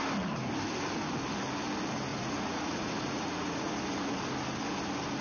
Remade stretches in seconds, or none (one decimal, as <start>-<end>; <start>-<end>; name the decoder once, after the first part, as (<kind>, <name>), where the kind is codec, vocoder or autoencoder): 2.1-3.7 (vocoder, Vocos)